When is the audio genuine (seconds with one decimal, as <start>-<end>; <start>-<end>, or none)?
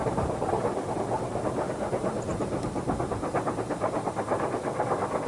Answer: 0.0-5.3